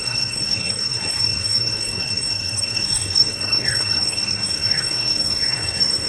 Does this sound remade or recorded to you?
remade